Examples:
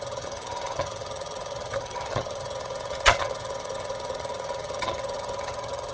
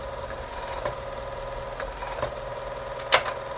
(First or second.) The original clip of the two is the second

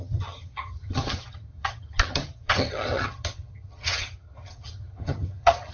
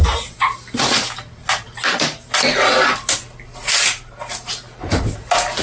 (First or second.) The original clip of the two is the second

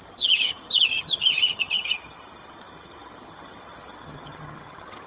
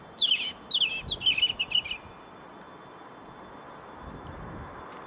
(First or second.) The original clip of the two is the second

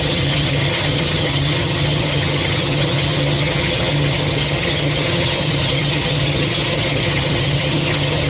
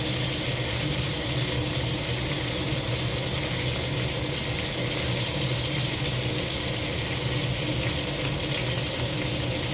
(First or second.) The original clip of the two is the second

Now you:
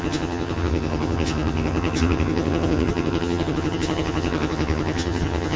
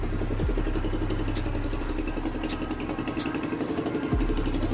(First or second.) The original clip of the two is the second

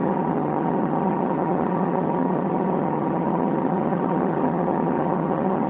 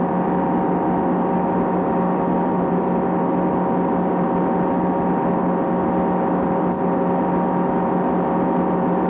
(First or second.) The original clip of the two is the second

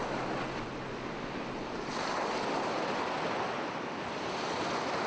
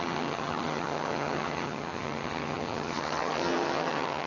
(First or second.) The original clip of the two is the first